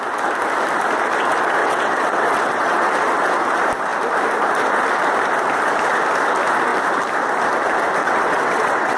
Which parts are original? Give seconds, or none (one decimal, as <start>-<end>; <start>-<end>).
0.0-1.6; 2.9-8.0